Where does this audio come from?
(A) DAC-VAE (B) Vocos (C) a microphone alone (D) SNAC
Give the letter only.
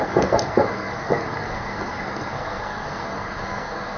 D